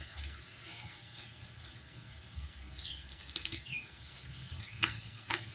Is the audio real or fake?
fake